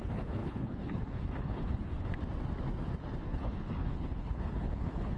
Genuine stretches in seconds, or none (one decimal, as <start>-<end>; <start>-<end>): 2.1-3.2